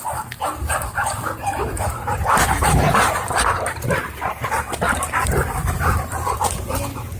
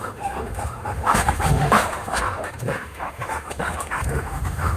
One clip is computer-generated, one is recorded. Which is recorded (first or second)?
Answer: first